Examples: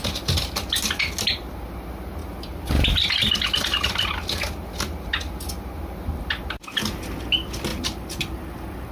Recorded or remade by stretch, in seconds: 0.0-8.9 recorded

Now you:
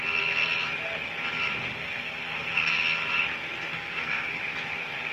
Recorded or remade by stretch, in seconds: 0.0-1.7 recorded; 1.7-2.8 remade; 2.8-3.7 recorded; 3.7-4.4 remade; 4.4-5.1 recorded

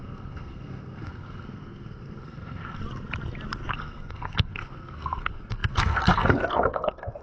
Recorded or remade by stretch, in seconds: 0.0-2.8 remade; 2.8-3.7 recorded; 3.7-7.2 remade

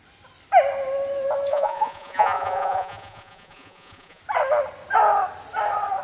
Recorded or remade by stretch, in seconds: 0.0-1.5 recorded; 1.5-4.2 remade; 4.2-6.0 recorded

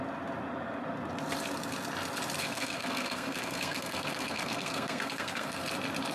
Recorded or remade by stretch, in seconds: 0.0-2.4 recorded; 2.4-5.6 remade; 5.6-6.1 recorded

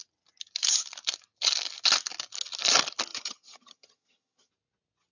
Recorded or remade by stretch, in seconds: 0.0-3.1 recorded; 3.1-4.5 remade; 4.5-5.1 recorded

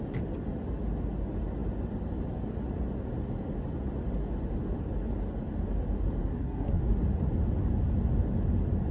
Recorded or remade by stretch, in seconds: 0.0-6.3 recorded; 6.3-6.8 remade; 6.8-8.9 recorded

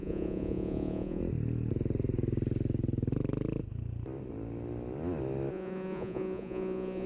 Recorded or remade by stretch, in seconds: 0.0-1.2 remade; 1.2-5.5 recorded; 5.5-7.1 remade